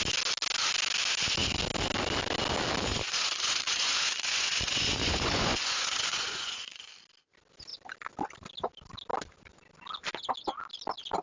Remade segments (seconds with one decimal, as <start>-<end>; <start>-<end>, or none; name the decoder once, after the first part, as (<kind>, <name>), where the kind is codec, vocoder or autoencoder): 2.9-6.9 (vocoder, Vocos)